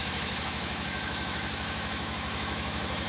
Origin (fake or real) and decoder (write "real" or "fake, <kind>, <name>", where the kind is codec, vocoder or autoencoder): fake, autoencoder, DAC-VAE